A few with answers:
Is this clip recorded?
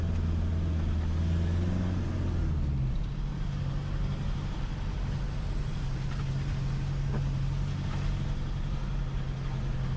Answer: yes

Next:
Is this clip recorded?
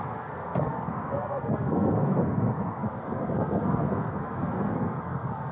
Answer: no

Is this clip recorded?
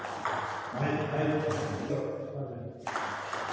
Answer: yes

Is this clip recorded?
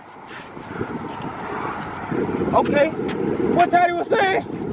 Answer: yes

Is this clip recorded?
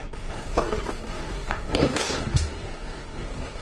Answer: no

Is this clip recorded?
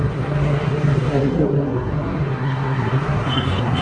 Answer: no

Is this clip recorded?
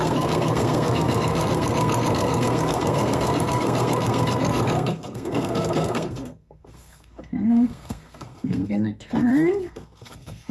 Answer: no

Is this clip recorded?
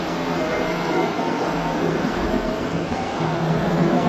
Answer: no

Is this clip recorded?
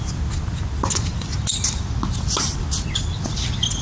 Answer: yes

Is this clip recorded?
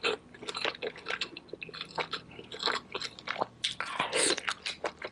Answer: yes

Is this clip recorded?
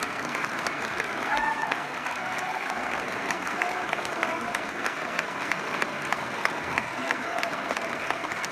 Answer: no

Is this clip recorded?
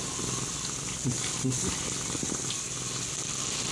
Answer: yes